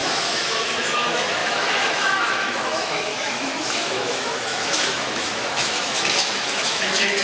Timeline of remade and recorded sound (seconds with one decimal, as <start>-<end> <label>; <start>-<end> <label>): 0.0-7.2 remade